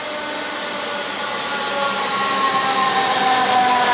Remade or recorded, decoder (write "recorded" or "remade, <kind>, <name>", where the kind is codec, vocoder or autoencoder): recorded